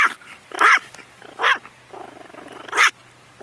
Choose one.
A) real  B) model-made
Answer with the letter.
A